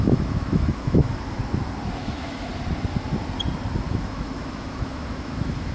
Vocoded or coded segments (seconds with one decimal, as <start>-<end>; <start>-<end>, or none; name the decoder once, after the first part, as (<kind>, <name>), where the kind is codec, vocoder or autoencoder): 0.0-1.4 (autoencoder, DAC-VAE); 2.0-2.5; 3.9-5.7